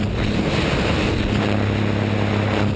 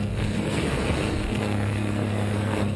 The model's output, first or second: second